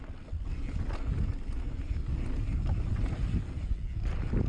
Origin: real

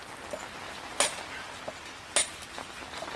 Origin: real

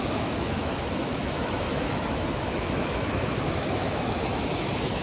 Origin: fake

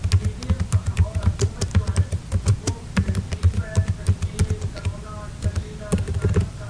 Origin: real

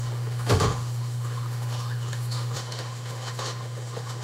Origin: fake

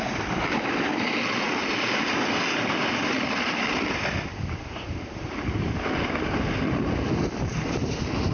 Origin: fake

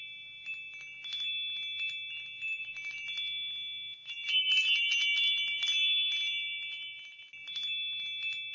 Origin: real